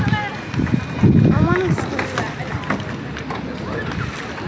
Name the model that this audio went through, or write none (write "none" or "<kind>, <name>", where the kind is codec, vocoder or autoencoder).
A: none